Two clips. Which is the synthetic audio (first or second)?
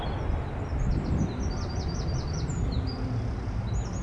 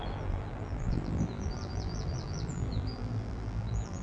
second